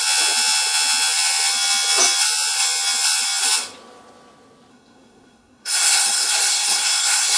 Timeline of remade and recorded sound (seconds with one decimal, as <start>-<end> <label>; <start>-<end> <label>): 0.0-4.7 recorded; 4.7-7.4 remade